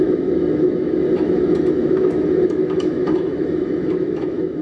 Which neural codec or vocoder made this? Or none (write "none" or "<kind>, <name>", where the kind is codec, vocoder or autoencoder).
autoencoder, DAC-VAE